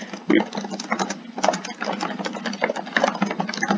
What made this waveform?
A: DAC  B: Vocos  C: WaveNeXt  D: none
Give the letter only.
D